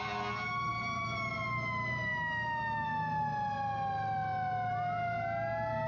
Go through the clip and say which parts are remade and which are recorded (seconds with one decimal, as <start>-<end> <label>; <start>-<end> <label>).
0.0-0.7 recorded; 0.7-1.3 remade; 1.3-5.9 recorded